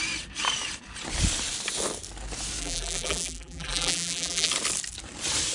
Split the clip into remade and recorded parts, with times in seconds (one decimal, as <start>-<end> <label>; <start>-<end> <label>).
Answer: 0.0-2.6 recorded; 2.6-4.5 remade; 4.5-5.5 recorded